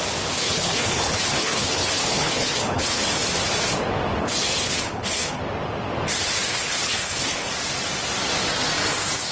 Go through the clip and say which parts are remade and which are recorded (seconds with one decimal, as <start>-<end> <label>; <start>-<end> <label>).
0.0-0.4 recorded; 0.4-3.1 remade; 3.1-4.2 recorded; 4.2-5.4 remade; 5.4-6.5 recorded; 6.5-7.5 remade; 7.5-9.3 recorded